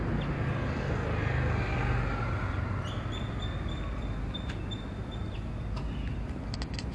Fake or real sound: real